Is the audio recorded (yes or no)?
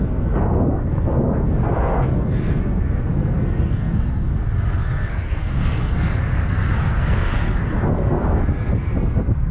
no